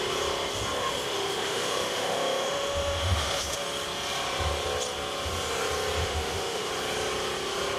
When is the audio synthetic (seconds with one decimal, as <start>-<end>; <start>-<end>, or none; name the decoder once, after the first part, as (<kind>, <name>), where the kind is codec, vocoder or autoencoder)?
0.8-3.6 (autoencoder, DAC-VAE); 6.0-6.7